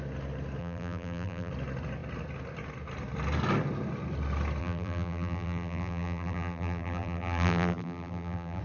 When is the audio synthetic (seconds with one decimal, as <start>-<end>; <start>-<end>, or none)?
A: 0.6-1.5; 4.6-8.6

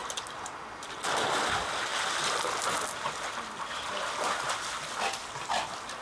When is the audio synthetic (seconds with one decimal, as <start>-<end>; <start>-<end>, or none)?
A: 0.8-1.9; 5.5-6.0